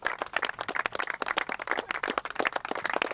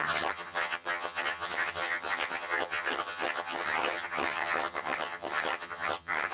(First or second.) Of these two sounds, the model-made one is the second